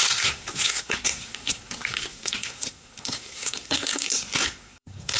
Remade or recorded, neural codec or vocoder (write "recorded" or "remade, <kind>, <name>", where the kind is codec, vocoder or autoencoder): remade, codec, SNAC